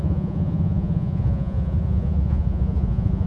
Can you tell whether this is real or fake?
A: fake